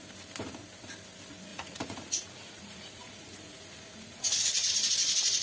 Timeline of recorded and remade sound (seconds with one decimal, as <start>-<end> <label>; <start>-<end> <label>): 0.0-1.5 recorded; 1.5-4.7 remade; 4.7-5.4 recorded